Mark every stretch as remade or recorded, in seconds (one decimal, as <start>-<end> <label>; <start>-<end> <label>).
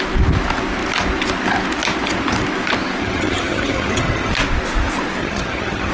0.0-3.0 recorded; 3.0-4.3 remade; 4.3-5.2 recorded; 5.2-5.9 remade